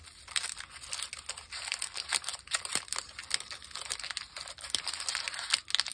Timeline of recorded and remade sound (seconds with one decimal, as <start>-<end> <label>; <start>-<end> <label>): 0.0-5.9 recorded